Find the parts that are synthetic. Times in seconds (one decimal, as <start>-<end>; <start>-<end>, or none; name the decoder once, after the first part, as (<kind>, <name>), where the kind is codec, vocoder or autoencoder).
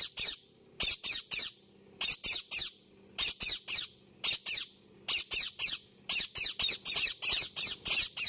none